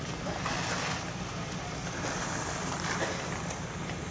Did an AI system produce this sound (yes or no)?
no